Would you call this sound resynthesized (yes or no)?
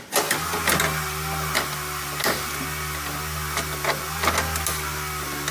no